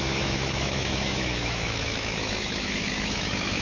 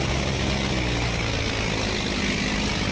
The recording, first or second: second